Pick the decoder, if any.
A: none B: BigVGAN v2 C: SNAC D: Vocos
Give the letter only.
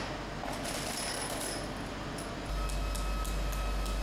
A